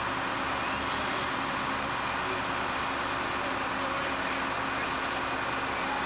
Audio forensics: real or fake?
real